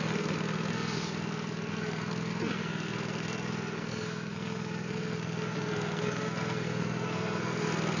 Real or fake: fake